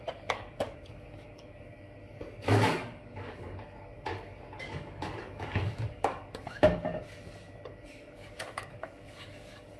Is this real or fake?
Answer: fake